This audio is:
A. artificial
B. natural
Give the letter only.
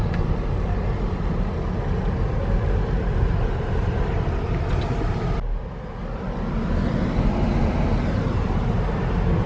B